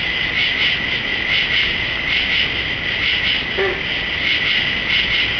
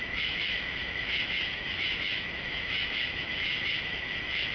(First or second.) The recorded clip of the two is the first